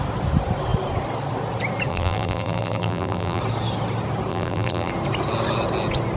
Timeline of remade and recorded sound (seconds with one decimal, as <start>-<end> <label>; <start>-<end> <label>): 0.0-1.9 recorded; 1.9-3.4 remade; 3.4-4.3 recorded; 4.3-4.9 remade; 4.9-6.2 recorded